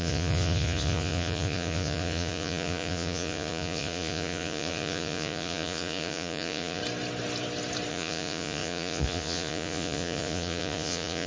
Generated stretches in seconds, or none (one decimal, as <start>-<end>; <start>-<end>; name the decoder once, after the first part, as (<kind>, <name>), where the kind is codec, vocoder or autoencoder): 0.0-6.8 (vocoder, Vocos); 7.9-11.3